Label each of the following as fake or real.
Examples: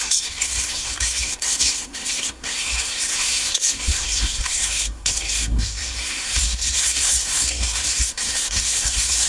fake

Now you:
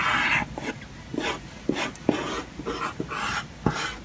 real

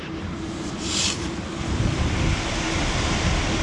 real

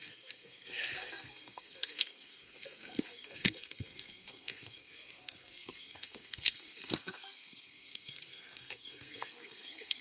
fake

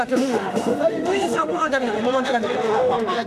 fake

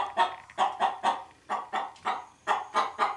real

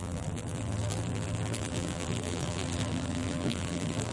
fake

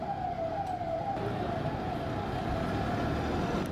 real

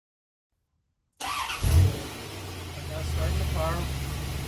real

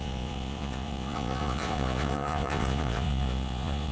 fake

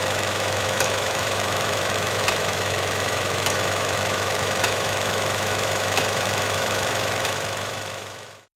fake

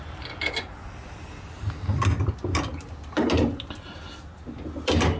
real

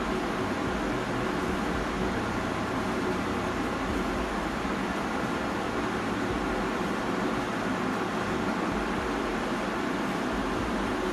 fake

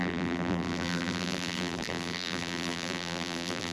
fake